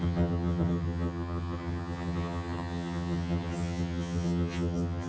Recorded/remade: remade